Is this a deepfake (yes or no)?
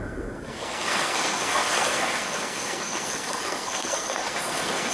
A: yes